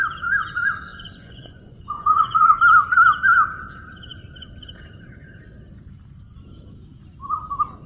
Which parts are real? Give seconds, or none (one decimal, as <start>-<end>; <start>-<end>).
0.0-0.9; 2.6-7.9